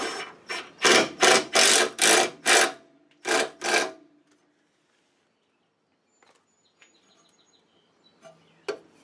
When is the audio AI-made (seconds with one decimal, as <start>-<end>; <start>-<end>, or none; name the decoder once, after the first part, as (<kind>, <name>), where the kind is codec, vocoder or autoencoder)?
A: none